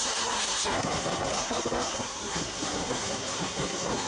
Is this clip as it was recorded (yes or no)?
no